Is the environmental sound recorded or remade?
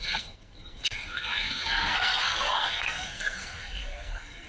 remade